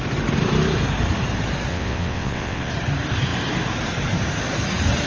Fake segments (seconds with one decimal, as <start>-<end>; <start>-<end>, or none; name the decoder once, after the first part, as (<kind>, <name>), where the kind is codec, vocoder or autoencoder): 1.7-2.7 (vocoder, WaveNeXt)